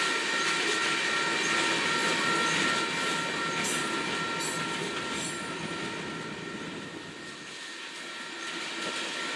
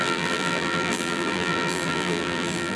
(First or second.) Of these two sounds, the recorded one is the first